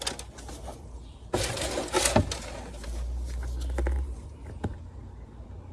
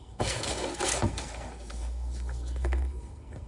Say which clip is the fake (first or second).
second